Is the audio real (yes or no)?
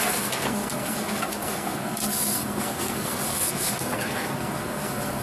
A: no